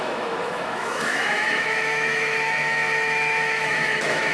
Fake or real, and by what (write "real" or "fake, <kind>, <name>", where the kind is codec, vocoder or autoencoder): fake, autoencoder, DAC-VAE